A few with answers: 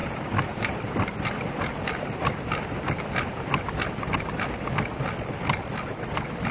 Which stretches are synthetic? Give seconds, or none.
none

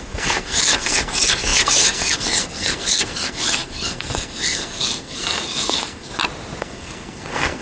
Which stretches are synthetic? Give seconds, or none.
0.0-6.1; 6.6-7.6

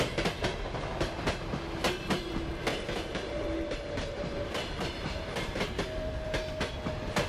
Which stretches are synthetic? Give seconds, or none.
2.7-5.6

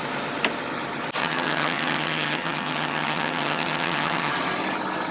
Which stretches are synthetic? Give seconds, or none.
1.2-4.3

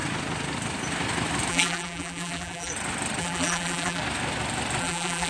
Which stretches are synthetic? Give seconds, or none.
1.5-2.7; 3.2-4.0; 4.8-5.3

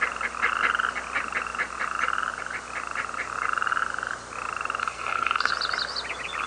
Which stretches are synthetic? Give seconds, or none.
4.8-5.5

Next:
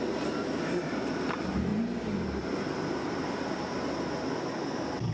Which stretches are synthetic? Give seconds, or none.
0.0-1.7